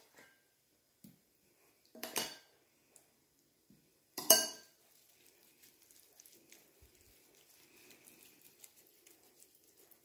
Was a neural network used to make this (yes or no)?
yes